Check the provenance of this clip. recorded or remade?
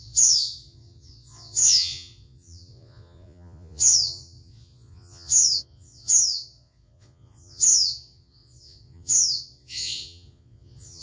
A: remade